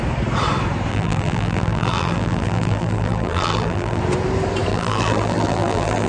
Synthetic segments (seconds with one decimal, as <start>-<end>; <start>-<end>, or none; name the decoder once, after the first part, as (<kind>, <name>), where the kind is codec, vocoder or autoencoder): 0.9-4.0 (vocoder, BigVGAN v2); 4.7-6.1